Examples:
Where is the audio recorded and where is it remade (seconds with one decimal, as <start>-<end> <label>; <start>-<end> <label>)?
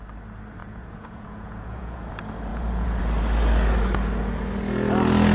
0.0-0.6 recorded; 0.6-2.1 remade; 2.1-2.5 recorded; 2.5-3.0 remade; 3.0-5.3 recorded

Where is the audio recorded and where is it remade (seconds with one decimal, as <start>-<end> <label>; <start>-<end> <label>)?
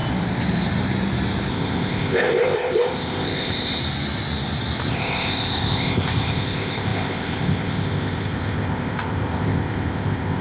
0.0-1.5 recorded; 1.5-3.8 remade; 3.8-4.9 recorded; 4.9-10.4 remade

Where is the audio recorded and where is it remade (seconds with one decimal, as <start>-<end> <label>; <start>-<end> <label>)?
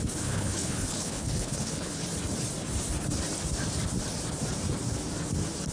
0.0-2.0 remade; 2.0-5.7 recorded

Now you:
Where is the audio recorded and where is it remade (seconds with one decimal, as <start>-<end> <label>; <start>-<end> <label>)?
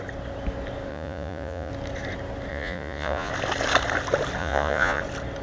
0.0-0.9 recorded; 0.9-1.7 remade; 1.7-2.5 recorded; 2.5-3.3 remade; 3.3-4.4 recorded; 4.4-5.0 remade; 5.0-5.4 recorded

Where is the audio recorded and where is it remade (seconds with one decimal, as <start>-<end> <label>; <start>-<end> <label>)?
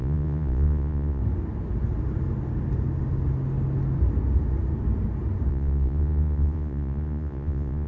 0.0-1.2 remade; 1.2-5.5 recorded; 5.5-7.9 remade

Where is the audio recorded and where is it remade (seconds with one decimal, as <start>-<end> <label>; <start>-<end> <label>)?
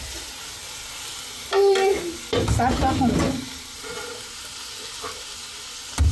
0.0-6.1 recorded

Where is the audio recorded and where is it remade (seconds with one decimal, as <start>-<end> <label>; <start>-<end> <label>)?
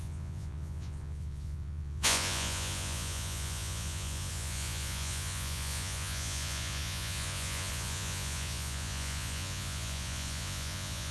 0.0-11.1 remade